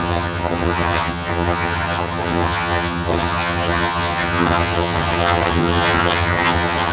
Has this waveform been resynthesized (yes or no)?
yes